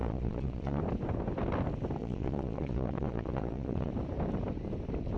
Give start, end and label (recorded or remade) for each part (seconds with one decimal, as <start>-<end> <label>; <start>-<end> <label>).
0.0-0.8 remade; 0.8-2.0 recorded; 2.0-3.9 remade; 3.9-5.2 recorded